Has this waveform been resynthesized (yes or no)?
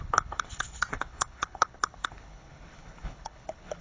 yes